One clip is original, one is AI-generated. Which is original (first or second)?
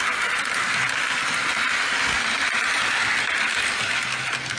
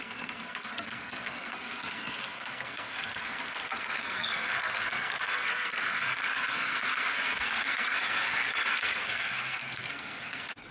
first